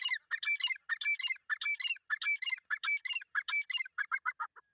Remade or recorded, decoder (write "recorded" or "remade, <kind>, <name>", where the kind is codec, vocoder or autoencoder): recorded